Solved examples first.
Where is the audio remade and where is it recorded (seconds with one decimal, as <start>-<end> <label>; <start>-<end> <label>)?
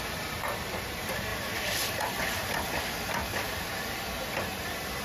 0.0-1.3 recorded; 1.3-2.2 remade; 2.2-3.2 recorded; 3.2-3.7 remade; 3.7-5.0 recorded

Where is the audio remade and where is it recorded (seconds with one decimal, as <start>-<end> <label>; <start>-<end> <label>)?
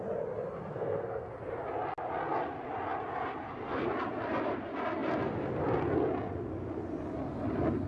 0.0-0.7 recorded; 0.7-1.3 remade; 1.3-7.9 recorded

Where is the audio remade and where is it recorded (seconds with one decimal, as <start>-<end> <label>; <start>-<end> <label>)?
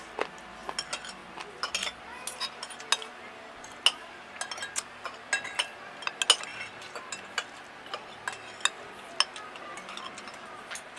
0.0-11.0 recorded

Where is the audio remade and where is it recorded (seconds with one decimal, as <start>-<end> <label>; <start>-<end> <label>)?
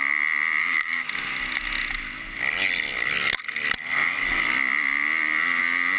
0.0-0.6 recorded; 0.6-1.1 remade; 1.1-6.0 recorded